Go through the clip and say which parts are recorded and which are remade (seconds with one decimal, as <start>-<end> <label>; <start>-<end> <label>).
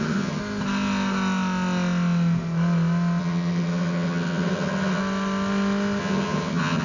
0.0-0.4 remade; 0.4-3.2 recorded; 3.2-5.0 remade; 5.0-6.0 recorded; 6.0-6.8 remade